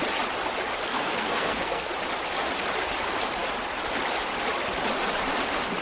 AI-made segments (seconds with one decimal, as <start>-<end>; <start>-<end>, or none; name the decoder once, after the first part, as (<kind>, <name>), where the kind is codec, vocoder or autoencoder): 0.9-1.9 (codec, SNAC)